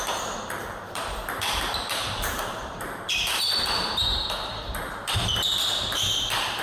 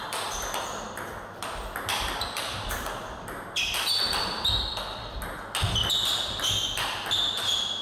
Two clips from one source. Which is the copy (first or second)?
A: first